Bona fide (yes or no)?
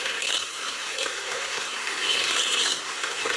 no